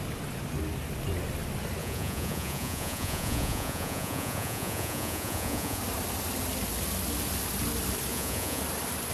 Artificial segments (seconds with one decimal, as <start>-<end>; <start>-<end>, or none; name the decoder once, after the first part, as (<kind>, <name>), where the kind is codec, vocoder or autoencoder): 1.8-5.8 (vocoder, Vocos); 8.1-8.6